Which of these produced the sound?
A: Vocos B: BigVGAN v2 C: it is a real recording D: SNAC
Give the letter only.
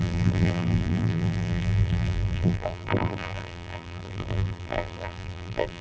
B